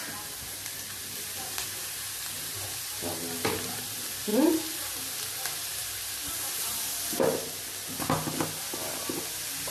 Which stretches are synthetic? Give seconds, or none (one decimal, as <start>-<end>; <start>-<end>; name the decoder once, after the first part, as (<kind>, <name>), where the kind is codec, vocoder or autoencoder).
none